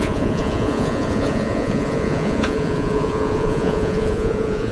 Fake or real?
fake